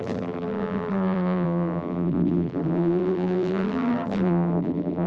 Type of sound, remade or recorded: remade